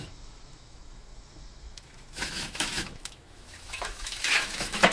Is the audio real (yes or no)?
no